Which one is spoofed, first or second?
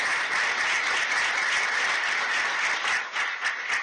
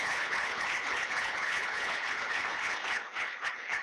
second